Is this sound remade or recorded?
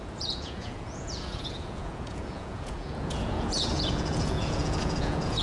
remade